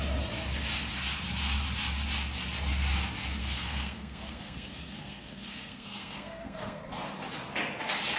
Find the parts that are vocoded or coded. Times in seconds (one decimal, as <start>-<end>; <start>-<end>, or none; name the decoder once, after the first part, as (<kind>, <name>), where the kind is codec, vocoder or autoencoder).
3.4-6.8 (codec, SNAC)